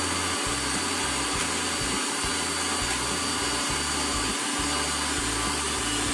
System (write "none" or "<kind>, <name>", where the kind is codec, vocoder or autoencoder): none